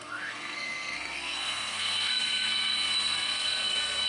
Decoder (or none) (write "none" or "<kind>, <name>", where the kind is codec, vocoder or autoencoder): codec, SNAC